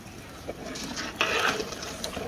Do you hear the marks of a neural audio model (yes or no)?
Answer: no